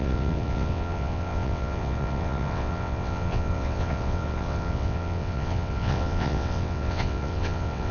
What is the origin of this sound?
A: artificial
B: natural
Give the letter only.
A